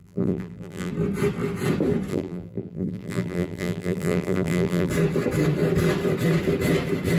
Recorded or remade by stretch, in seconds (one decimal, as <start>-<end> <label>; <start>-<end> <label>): 0.0-0.9 remade; 0.9-2.1 recorded; 2.1-4.9 remade; 4.9-7.2 recorded